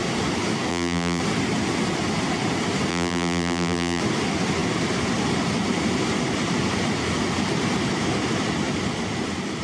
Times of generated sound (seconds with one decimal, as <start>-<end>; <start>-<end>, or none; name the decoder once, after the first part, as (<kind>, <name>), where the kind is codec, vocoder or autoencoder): 0.7-1.2 (vocoder, BigVGAN v2); 2.9-4.0